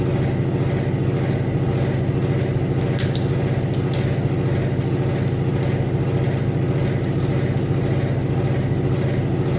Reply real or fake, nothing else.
real